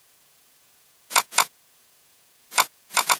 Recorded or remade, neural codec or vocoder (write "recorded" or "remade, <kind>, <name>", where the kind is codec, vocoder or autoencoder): remade, vocoder, Vocos